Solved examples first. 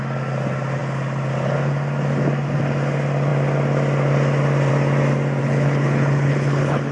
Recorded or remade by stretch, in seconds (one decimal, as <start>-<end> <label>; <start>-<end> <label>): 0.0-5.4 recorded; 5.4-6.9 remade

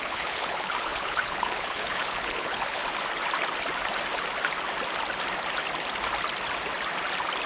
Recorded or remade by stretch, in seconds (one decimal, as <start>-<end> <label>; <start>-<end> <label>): 0.0-2.8 remade; 2.8-7.5 recorded

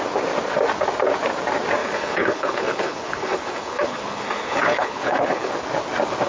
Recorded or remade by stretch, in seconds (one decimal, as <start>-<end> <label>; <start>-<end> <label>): 0.0-1.8 recorded; 1.8-5.5 remade; 5.5-6.3 recorded

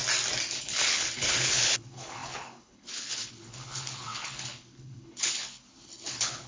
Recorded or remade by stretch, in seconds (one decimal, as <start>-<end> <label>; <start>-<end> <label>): 0.0-0.6 recorded; 0.6-6.5 remade

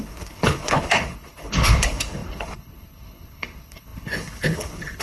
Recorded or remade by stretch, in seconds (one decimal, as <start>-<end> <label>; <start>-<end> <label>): 0.0-5.0 remade